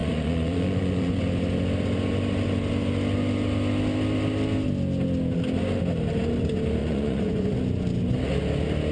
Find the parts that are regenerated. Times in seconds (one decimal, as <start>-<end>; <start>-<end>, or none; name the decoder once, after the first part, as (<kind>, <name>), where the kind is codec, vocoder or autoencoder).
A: 0.0-1.2 (vocoder, Vocos); 6.8-7.5